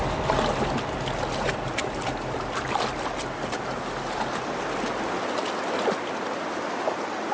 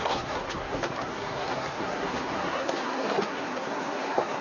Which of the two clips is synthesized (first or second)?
second